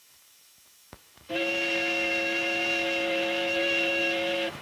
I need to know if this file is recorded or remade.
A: remade